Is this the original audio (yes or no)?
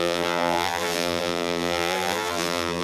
no